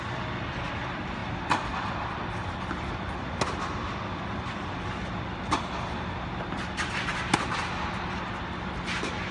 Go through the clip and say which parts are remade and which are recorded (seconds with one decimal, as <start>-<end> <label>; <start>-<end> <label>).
0.0-9.3 recorded

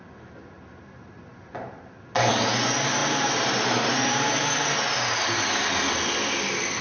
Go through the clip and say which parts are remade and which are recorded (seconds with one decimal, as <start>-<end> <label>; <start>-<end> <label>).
0.0-6.8 recorded